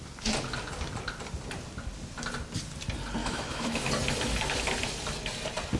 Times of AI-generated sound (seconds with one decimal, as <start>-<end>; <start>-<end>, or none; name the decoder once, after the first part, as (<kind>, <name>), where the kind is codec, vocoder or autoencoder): 3.2-3.9 (autoencoder, DAC-VAE)